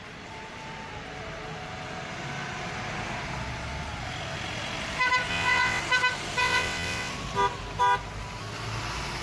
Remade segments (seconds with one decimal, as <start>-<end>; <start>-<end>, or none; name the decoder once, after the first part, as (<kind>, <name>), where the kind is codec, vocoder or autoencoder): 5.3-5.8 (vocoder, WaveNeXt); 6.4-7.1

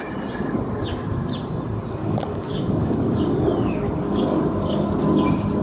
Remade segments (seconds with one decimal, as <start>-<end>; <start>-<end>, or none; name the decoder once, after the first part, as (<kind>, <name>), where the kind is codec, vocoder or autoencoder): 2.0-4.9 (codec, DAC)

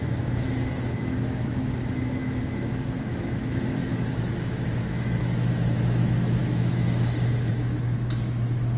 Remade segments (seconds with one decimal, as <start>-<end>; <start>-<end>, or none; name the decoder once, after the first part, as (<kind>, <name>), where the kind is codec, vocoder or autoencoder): 0.0-8.8 (autoencoder, DAC-VAE)

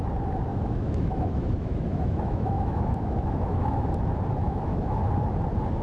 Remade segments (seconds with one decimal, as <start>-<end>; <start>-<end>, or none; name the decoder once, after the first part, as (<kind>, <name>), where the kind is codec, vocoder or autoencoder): 0.5-4.0 (autoencoder, DAC-VAE); 4.4-5.0